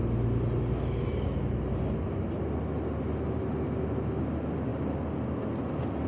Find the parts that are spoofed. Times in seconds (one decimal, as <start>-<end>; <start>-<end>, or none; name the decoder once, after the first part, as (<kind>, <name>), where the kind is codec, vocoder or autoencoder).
none

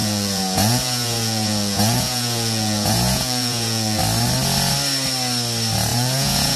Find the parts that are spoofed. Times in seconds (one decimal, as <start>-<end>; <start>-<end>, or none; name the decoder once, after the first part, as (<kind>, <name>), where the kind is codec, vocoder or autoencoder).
0.0-4.0 (vocoder, Vocos); 5.9-6.6

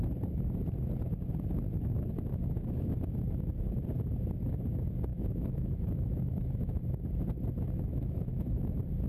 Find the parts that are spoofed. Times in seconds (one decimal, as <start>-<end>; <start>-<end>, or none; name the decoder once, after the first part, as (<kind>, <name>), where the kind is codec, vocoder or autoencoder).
2.3-2.9 (autoencoder, DAC-VAE); 5.1-6.8; 7.9-8.7

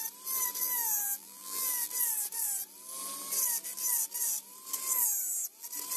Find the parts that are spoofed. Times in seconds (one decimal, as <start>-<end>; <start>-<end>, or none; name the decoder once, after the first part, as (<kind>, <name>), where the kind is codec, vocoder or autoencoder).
0.6-1.9 (vocoder, BigVGAN v2)

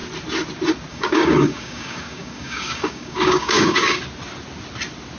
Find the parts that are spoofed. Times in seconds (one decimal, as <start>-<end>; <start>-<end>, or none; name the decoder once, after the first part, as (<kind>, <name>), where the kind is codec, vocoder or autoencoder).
0.9-4.0 (codec, DAC)

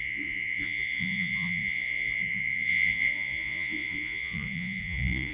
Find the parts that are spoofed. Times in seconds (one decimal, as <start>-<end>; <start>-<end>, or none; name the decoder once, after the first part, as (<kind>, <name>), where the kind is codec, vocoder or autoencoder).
0.0-5.3 (vocoder, Vocos)

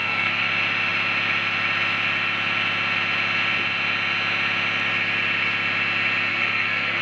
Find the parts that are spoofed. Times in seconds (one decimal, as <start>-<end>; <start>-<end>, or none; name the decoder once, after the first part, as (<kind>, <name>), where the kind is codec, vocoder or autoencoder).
0.0-0.5 (codec, SNAC); 6.3-7.0

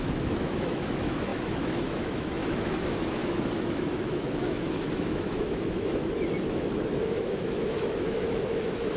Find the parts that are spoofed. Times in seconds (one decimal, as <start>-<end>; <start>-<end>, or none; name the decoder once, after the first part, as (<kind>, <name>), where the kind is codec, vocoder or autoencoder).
0.0-9.0 (autoencoder, DAC-VAE)